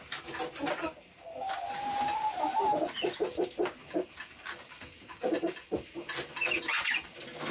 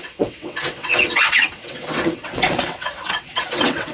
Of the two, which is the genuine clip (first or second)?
first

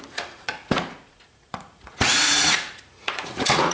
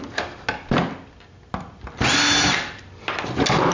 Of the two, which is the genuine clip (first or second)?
second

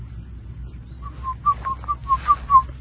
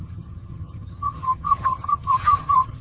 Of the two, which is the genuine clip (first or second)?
first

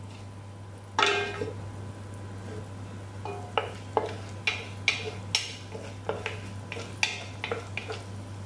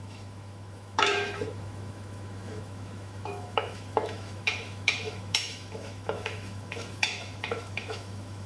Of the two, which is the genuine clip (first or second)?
first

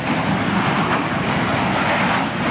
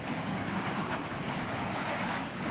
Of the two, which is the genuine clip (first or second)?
first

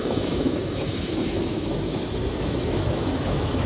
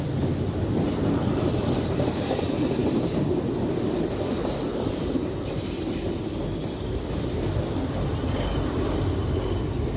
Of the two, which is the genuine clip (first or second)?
second